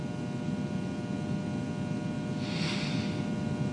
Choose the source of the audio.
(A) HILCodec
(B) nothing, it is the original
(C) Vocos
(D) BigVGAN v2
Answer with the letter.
B